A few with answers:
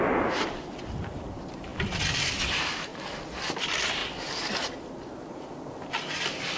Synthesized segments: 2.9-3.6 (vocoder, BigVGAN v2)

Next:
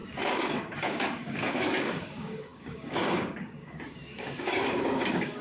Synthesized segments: 0.0-5.4 (codec, DAC)

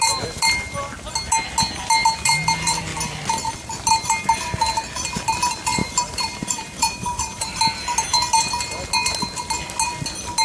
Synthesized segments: 5.8-7.6 (vocoder, BigVGAN v2)

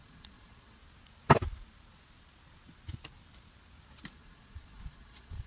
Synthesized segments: 0.0-0.8 (vocoder, Vocos); 4.1-5.5